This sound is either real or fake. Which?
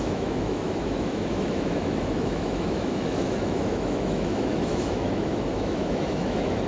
fake